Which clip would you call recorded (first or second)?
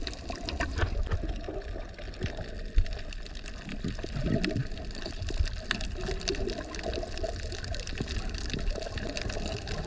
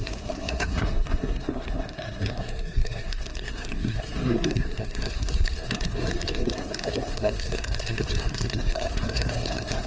first